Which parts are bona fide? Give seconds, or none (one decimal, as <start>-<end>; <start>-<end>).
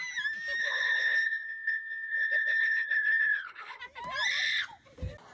0.0-0.6; 3.8-5.3